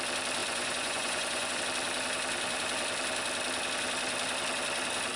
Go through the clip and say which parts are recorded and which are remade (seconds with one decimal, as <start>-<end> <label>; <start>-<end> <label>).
0.0-0.4 recorded; 0.4-1.6 remade; 1.6-5.2 recorded